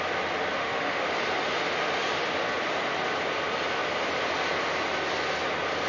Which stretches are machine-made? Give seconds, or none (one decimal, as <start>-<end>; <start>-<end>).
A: 0.6-1.1